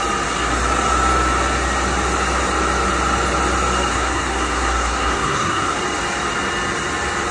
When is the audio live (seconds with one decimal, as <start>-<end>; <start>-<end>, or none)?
0.0-3.9; 5.8-7.3